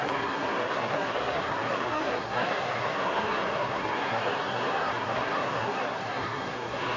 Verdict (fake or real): fake